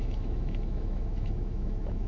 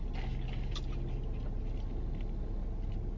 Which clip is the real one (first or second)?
second